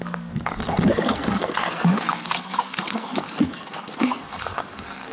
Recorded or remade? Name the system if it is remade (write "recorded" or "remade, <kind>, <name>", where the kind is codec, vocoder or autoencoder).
remade, codec, SNAC